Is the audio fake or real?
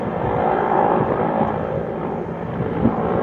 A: fake